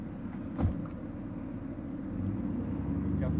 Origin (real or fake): real